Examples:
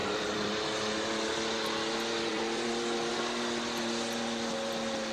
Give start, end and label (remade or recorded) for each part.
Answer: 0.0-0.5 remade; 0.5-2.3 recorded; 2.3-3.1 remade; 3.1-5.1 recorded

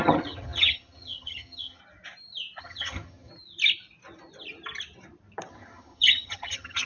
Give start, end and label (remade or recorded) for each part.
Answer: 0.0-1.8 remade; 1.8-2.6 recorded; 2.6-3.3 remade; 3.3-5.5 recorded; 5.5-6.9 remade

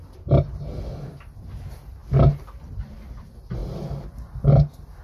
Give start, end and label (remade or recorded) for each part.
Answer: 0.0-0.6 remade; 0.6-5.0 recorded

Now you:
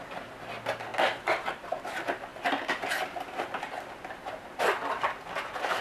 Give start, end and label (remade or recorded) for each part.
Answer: 0.0-5.8 recorded